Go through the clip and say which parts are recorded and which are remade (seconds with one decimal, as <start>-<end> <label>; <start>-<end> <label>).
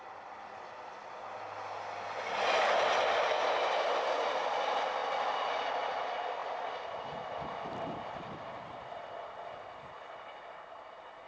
0.0-11.3 recorded